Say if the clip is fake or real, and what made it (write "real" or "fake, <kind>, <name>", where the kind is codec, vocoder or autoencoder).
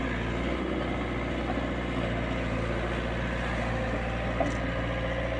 real